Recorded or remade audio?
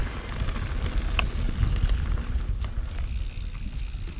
recorded